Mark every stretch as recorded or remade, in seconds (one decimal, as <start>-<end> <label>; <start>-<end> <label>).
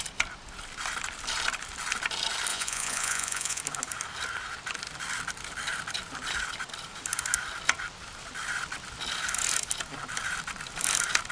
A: 0.0-2.5 recorded; 2.5-3.6 remade; 3.6-11.3 recorded